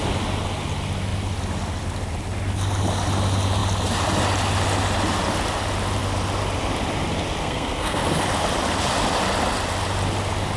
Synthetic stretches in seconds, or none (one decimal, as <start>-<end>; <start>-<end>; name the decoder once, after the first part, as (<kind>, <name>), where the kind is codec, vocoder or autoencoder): 7.4-8.0 (codec, SNAC)